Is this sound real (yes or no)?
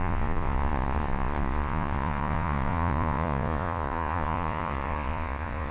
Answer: no